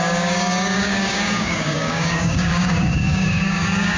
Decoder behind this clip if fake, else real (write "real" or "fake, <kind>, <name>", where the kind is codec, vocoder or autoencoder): fake, codec, DAC